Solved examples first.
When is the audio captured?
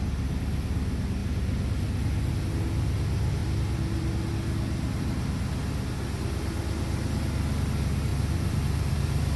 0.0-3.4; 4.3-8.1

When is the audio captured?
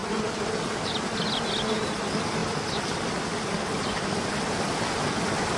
0.0-5.6